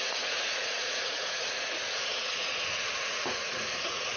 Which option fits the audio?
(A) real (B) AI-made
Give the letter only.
B